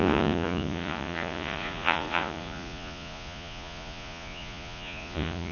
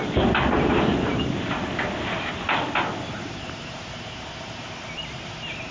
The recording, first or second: second